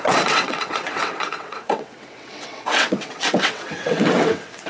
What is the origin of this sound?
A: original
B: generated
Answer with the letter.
B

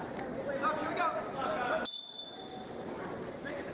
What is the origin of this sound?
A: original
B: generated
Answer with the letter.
A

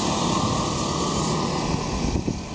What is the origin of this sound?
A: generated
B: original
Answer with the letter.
B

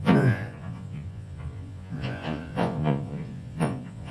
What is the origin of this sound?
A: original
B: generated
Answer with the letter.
B